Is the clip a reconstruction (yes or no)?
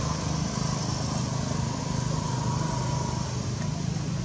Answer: no